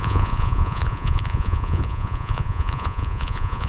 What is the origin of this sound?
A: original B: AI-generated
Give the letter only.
B